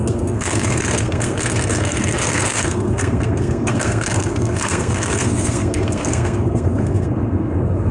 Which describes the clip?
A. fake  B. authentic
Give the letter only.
A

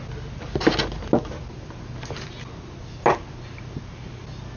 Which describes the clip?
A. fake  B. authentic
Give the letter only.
B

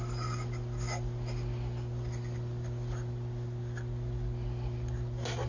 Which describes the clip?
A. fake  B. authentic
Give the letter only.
B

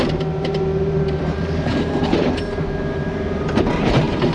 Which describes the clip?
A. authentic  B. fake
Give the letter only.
B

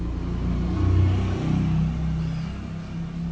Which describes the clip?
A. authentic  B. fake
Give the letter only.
A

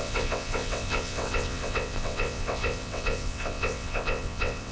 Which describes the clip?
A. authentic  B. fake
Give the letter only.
B